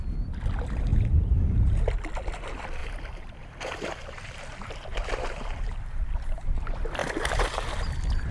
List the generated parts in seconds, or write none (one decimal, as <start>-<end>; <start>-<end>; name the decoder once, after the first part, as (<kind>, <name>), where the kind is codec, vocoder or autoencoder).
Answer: 0.9-1.8 (vocoder, BigVGAN v2); 2.8-6.0; 7.0-7.8